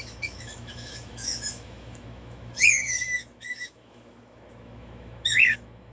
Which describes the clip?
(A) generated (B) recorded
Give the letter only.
A